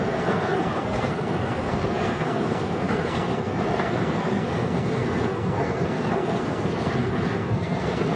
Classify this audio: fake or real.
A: fake